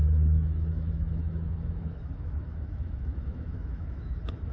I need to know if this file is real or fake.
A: fake